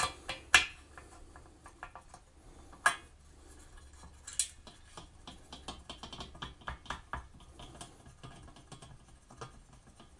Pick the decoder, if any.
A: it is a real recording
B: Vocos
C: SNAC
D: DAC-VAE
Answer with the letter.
A